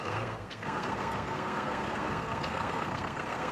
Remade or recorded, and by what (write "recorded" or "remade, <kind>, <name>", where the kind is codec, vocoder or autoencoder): remade, codec, SNAC